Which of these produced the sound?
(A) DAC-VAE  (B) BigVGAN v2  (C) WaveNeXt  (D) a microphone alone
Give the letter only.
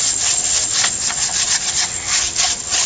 C